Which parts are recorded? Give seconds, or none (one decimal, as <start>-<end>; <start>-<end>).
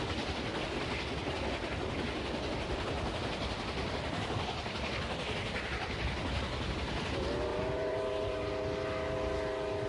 0.0-7.5; 8.5-9.9